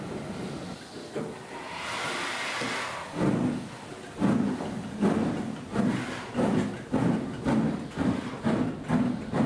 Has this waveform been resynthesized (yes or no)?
no